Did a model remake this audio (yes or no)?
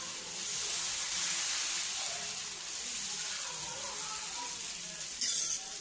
no